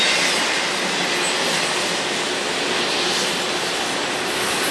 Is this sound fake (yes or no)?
no